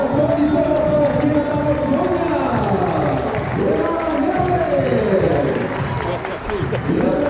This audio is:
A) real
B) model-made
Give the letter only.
A